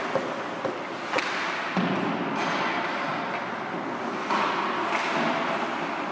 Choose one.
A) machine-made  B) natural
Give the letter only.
B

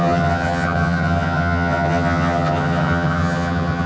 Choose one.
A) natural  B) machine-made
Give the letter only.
B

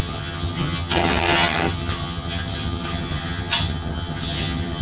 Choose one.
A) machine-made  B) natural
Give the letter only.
A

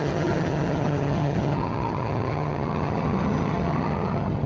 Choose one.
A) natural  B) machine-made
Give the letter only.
B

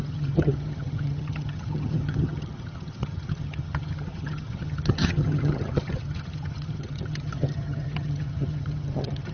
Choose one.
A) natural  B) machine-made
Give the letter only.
B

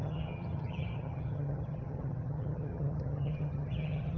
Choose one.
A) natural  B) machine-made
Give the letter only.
B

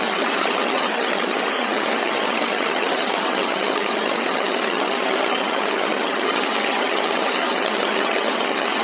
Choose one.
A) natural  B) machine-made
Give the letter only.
B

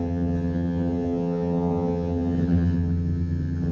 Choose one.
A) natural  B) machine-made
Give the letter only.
B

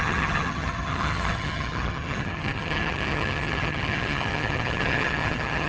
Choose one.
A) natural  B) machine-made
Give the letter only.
B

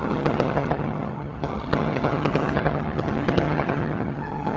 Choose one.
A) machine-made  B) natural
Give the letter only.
A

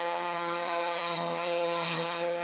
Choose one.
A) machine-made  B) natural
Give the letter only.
A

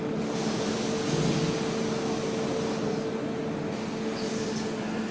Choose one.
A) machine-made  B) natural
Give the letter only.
B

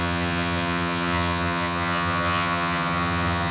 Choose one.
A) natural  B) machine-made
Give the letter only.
B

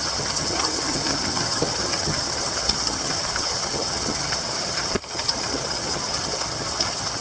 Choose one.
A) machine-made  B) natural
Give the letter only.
A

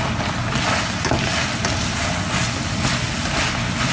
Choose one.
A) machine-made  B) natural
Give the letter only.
B